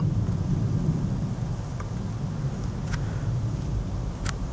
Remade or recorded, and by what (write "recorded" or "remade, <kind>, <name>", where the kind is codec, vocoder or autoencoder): recorded